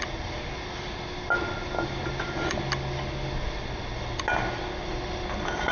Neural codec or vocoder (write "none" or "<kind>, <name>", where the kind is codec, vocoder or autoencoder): none